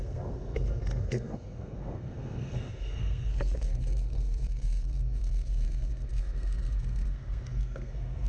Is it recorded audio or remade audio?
remade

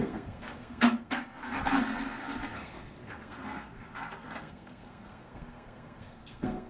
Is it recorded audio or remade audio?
remade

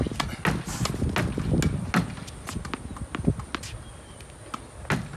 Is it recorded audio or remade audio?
recorded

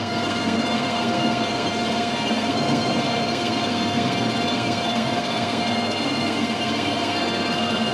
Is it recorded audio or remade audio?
remade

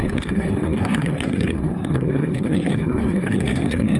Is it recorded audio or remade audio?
remade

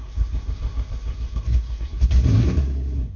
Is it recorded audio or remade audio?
remade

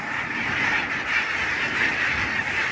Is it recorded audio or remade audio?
recorded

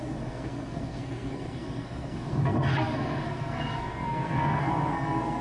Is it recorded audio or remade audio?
remade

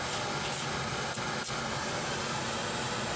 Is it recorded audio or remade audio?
recorded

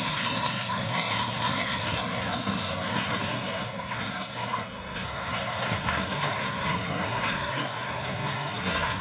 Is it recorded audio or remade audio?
remade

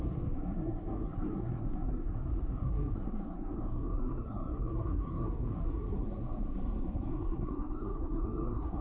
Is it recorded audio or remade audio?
remade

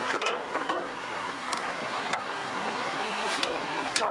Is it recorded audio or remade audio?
remade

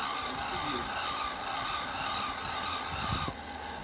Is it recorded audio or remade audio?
recorded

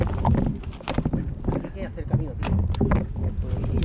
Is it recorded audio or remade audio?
recorded